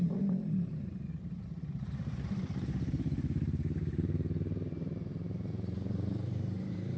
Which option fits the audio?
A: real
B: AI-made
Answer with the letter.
B